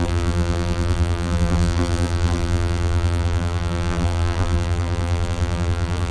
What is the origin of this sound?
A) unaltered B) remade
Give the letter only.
B